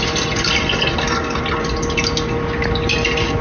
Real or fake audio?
real